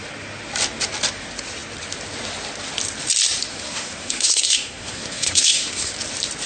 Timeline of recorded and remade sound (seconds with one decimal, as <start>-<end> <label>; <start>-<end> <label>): 0.0-3.5 recorded; 3.5-5.9 remade; 5.9-6.5 recorded